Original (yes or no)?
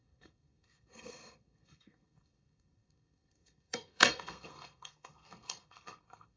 no